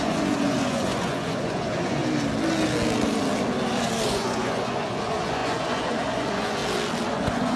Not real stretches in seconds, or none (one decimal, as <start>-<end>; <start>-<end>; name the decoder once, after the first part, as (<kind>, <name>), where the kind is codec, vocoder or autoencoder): 0.0-2.0 (vocoder, Vocos); 4.1-6.6; 7.1-7.6